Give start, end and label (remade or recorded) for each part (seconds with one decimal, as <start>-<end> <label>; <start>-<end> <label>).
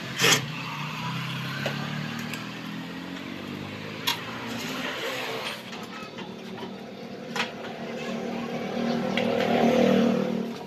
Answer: 0.0-4.1 recorded; 4.1-5.3 remade; 5.3-10.7 recorded